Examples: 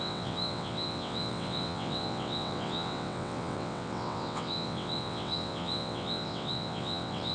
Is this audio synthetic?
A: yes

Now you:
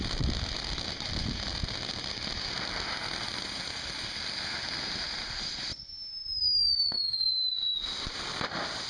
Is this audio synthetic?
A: no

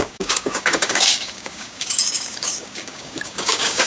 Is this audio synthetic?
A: yes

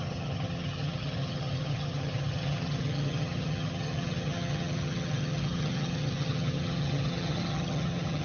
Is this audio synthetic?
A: yes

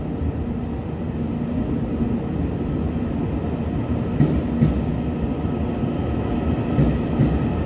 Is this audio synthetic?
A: no